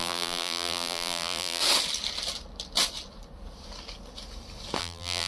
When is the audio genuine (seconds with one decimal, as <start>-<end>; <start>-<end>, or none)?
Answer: 1.6-4.8

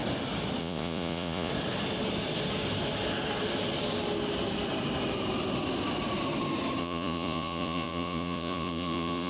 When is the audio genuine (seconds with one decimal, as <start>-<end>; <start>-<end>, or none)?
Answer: 0.0-0.6; 1.5-6.8

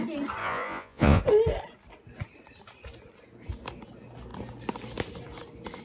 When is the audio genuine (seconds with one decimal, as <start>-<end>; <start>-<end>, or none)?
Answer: 0.0-0.4; 1.2-5.8

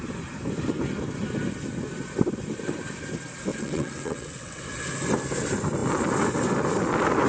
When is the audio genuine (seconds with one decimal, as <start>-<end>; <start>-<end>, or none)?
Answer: 0.0-3.5; 4.6-7.3

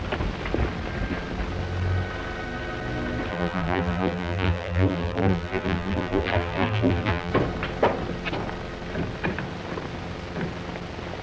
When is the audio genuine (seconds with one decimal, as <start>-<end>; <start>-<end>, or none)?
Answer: 0.0-3.3; 7.3-11.2

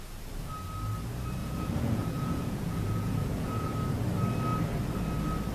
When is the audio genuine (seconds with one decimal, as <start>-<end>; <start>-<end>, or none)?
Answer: 0.0-1.4; 3.7-5.5

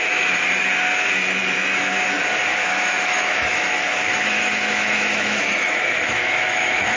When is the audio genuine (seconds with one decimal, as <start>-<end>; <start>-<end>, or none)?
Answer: 0.0-2.5